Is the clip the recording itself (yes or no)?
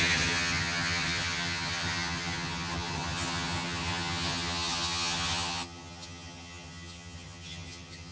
no